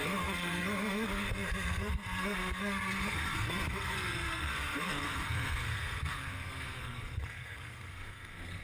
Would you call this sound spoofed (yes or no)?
yes